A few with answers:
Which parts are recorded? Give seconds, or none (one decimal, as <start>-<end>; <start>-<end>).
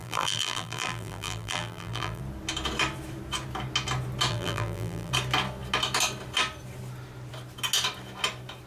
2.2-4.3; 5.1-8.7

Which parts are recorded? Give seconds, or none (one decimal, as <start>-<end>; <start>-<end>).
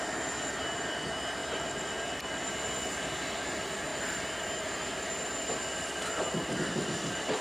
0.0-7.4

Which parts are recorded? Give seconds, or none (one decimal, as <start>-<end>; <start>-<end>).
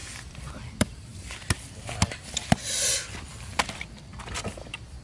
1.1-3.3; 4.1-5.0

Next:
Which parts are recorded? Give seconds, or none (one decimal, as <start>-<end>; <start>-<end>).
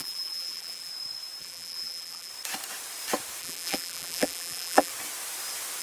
0.9-1.4; 2.3-3.4; 4.9-5.8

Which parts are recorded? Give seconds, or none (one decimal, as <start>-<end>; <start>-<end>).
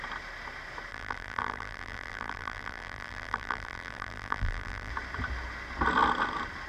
0.0-0.9; 4.9-6.7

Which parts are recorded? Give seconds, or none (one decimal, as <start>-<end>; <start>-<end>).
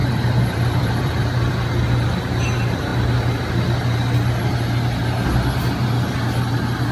1.5-6.9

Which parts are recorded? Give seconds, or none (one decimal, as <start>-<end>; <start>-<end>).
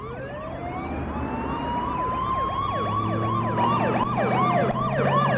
0.0-4.6